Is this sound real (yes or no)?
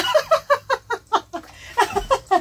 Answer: yes